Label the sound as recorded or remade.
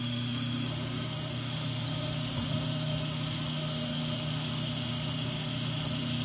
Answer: remade